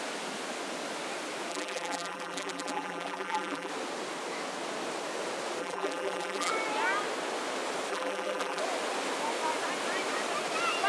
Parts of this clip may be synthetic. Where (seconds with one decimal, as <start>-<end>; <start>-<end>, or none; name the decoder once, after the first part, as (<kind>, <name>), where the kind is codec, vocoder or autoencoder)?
1.5-3.7 (vocoder, BigVGAN v2); 5.6-6.5; 7.9-8.6